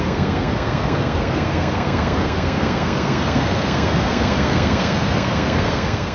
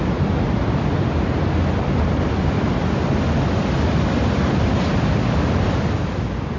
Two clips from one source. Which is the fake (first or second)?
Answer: first